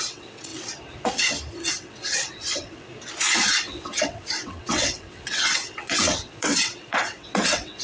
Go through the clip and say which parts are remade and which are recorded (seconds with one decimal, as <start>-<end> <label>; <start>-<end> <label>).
0.0-0.5 remade; 0.5-1.7 recorded; 1.7-2.9 remade; 2.9-3.5 recorded; 3.5-7.8 remade